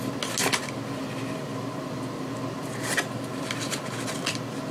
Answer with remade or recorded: recorded